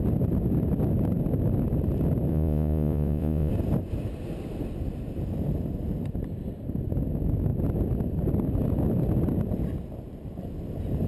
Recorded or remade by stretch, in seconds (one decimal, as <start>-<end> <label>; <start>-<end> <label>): 0.0-2.3 recorded; 2.3-3.5 remade; 3.5-11.1 recorded

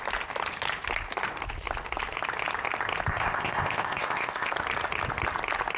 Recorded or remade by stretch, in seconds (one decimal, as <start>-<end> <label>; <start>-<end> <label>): 0.0-3.1 recorded; 3.1-4.5 remade; 4.5-5.8 recorded

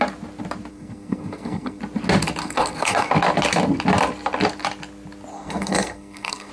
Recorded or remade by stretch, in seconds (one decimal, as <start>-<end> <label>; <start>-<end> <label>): 0.0-0.7 recorded; 0.7-1.8 remade; 1.8-2.4 recorded; 2.4-3.1 remade; 3.1-5.3 recorded; 5.3-6.5 remade

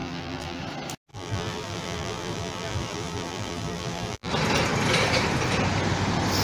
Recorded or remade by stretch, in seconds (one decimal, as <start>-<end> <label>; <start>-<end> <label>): 0.0-0.6 remade; 0.6-1.1 recorded; 1.1-4.3 remade; 4.3-6.4 recorded